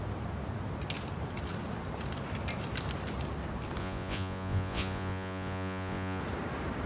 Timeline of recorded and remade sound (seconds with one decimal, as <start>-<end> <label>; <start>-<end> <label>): 0.0-3.8 recorded; 3.8-6.2 remade; 6.2-6.9 recorded